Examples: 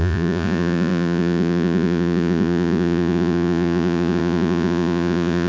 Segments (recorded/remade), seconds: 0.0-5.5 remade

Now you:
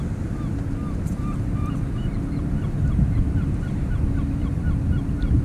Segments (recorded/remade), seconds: 0.0-0.8 recorded; 0.8-4.0 remade; 4.0-4.4 recorded; 4.4-5.4 remade

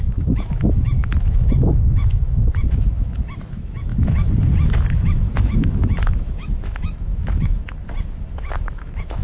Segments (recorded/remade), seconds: 0.0-3.9 remade; 3.9-4.9 recorded; 4.9-7.8 remade; 7.8-8.4 recorded; 8.4-9.2 remade

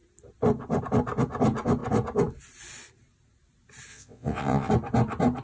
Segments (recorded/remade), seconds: 0.0-3.9 recorded; 3.9-4.7 remade; 4.7-5.4 recorded

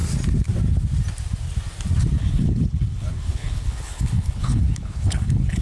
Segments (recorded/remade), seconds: 0.0-2.2 recorded; 2.2-5.6 remade

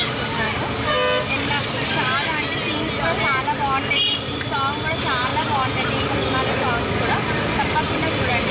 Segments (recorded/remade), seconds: 0.0-8.5 recorded